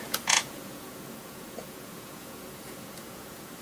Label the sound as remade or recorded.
remade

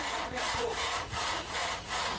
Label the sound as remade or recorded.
remade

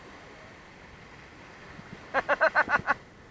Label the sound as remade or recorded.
recorded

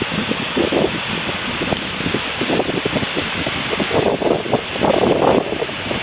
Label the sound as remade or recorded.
recorded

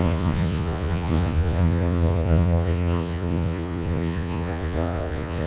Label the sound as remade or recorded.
remade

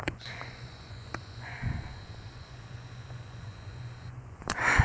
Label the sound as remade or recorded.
remade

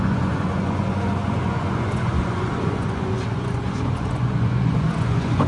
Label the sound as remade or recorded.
remade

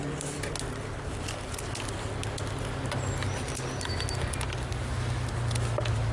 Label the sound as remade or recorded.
recorded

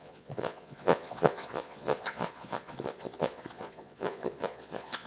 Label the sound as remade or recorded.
remade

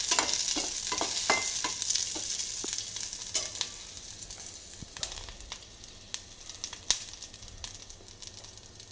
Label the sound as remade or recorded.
recorded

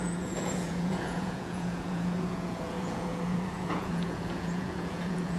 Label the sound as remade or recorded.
remade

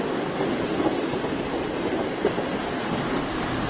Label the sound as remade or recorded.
recorded